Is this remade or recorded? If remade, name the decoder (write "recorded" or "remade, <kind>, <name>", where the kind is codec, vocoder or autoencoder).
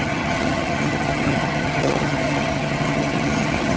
remade, vocoder, HiFi-GAN